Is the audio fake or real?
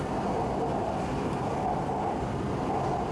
real